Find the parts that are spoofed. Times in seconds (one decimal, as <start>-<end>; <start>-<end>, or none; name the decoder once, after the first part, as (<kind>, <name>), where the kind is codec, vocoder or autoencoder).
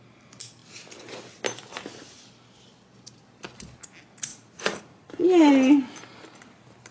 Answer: 4.3-5.5 (vocoder, Vocos)